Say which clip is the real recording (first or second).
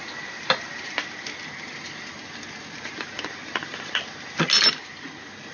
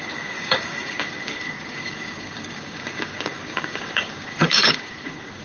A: first